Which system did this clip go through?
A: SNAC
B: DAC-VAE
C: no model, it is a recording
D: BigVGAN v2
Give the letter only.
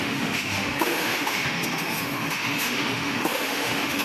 B